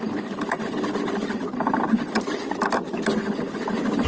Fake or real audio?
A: real